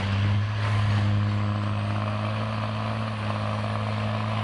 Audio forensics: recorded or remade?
recorded